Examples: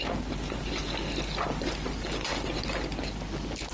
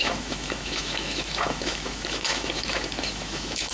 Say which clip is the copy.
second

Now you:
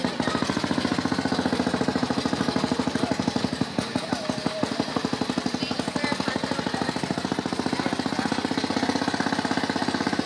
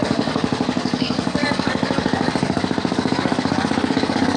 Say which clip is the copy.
second